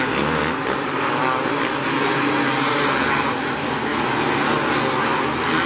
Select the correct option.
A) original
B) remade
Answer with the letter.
A